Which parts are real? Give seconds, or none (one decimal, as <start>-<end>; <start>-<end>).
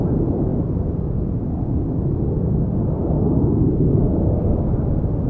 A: 0.0-5.3